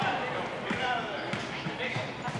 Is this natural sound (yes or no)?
yes